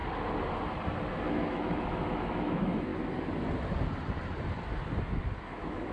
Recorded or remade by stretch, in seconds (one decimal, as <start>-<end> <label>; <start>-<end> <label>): 0.0-1.3 recorded; 1.3-2.9 remade; 2.9-5.4 recorded; 5.4-5.9 remade